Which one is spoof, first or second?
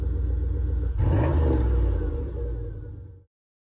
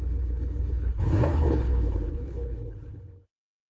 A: second